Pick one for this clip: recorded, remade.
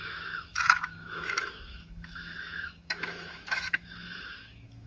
remade